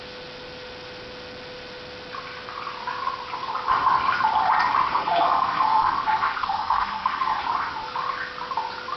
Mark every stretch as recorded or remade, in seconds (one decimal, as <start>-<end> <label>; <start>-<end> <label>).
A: 0.0-4.9 recorded; 4.9-7.4 remade; 7.4-9.0 recorded